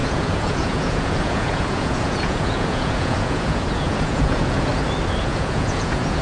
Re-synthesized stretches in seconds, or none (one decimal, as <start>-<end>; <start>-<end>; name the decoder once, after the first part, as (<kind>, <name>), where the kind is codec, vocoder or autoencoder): 0.0-4.7 (vocoder, Vocos); 5.2-6.2